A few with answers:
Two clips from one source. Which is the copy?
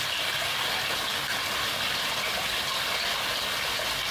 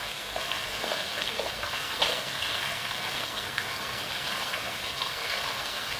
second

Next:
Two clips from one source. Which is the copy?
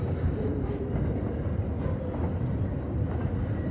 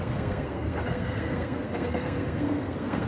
second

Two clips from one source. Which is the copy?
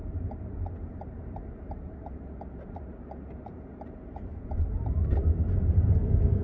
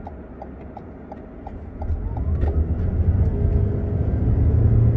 first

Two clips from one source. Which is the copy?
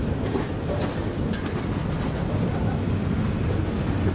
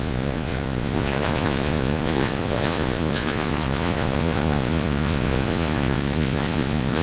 second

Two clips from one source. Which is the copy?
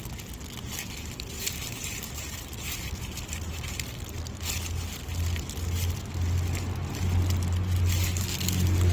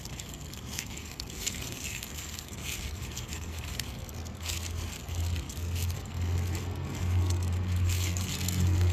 second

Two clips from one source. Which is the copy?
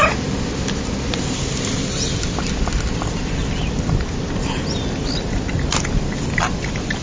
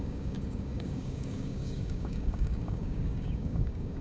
second